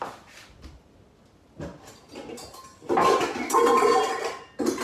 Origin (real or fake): real